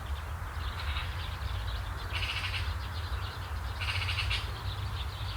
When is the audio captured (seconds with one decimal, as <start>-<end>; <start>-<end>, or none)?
0.0-5.4